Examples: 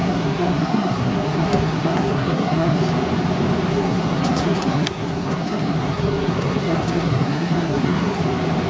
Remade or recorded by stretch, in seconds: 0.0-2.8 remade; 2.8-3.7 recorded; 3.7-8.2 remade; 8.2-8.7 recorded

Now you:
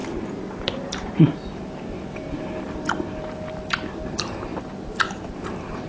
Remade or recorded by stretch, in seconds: 0.0-5.9 recorded